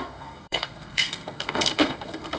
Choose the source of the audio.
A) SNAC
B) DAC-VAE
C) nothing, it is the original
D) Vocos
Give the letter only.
A